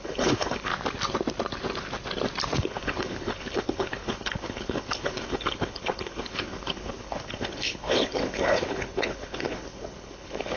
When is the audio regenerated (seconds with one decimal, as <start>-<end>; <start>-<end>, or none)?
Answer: 0.0-0.7; 2.6-10.6